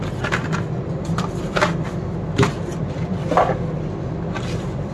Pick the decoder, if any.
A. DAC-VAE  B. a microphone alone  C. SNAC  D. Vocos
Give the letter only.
B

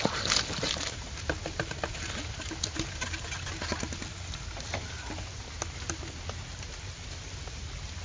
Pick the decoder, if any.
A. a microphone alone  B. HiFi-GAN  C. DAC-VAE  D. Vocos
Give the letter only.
A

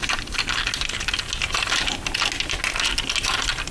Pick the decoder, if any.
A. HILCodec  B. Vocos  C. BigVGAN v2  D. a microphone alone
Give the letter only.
D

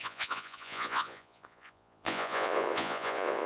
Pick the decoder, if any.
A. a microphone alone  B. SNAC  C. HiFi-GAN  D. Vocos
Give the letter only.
D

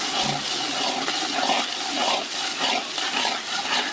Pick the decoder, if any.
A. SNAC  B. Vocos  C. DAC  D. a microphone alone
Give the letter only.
D